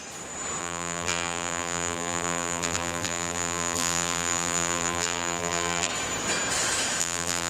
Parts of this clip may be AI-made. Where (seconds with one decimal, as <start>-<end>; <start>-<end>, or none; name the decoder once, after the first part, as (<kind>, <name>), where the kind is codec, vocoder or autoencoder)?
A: 0.6-5.9 (vocoder, BigVGAN v2); 7.0-7.5